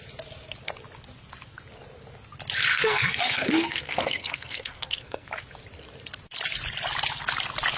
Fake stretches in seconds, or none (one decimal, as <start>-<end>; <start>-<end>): 2.7-5.3